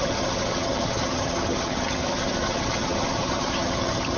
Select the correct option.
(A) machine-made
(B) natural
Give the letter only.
A